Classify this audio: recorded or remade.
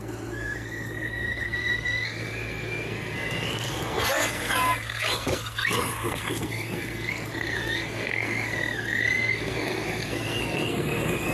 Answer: remade